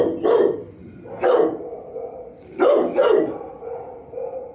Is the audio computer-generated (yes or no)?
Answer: no